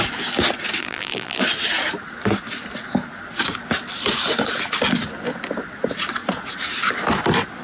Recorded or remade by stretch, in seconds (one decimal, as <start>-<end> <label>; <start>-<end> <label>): 0.0-0.8 recorded; 0.8-1.4 remade; 1.4-7.6 recorded